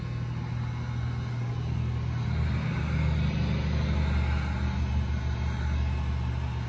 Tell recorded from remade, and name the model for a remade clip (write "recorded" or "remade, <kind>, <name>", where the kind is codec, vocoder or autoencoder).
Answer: recorded